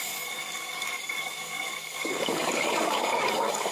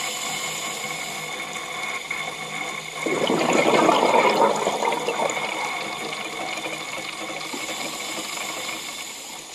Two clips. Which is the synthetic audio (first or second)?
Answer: first